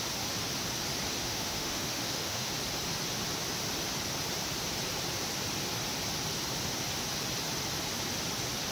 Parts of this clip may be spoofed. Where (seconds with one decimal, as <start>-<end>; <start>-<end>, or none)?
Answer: 1.2-2.5